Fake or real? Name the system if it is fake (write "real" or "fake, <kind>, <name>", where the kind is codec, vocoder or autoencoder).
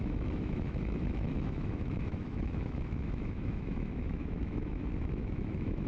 fake, autoencoder, DAC-VAE